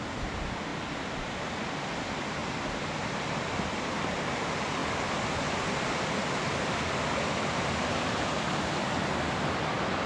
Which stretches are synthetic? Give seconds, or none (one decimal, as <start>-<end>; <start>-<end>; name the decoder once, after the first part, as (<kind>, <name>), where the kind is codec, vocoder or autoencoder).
none